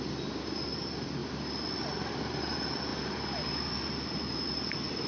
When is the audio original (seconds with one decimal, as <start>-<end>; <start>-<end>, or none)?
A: 0.0-5.1